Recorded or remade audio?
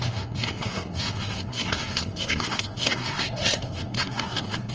remade